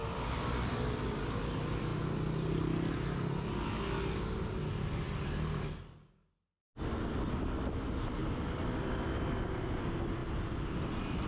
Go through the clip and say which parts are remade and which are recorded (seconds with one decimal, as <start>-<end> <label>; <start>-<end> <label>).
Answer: 0.0-1.2 remade; 1.2-8.2 recorded; 8.2-9.4 remade; 9.4-11.3 recorded